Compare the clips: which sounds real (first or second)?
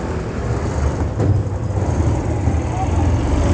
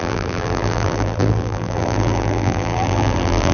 first